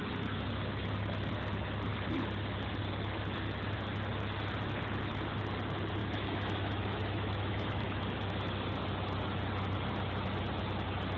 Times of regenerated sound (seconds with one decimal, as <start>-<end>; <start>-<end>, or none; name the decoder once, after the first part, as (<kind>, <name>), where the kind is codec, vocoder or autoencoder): 6.0-8.0 (autoencoder, DAC-VAE)

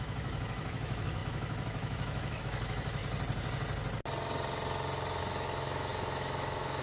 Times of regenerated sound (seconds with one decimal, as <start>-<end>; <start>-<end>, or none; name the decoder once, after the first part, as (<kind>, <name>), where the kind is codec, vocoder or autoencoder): 0.0-3.0 (autoencoder, DAC-VAE); 5.2-6.8

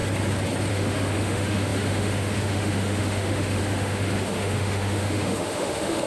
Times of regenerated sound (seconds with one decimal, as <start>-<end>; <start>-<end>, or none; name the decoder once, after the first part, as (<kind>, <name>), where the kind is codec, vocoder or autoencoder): 0.7-6.1 (autoencoder, DAC-VAE)

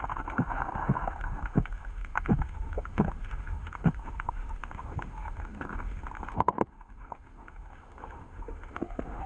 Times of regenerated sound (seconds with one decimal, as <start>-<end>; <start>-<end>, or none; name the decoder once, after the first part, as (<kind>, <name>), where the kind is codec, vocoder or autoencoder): 0.0-9.3 (autoencoder, DAC-VAE)

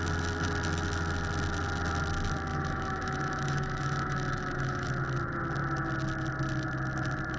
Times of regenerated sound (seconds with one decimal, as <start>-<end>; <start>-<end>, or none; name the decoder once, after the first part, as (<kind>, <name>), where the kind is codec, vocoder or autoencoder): 2.5-4.9 (autoencoder, DAC-VAE)

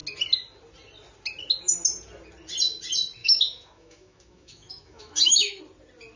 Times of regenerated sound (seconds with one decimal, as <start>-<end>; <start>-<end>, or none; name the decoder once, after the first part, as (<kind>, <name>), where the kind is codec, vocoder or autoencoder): 3.2-5.6 (autoencoder, DAC-VAE)